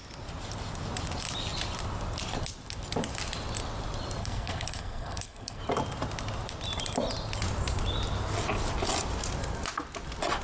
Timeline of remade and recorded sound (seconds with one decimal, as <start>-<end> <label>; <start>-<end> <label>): 0.0-4.2 recorded; 4.2-5.6 remade; 5.6-10.4 recorded